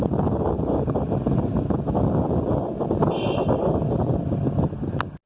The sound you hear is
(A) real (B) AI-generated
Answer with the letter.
A